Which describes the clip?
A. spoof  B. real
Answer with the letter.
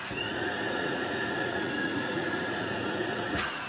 A